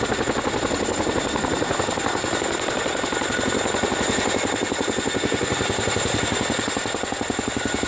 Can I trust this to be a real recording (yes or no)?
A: yes